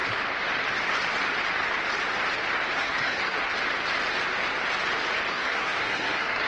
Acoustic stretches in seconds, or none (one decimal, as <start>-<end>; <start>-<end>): 0.0-2.8; 3.5-5.3